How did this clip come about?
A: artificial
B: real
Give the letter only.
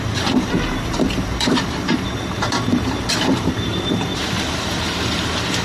A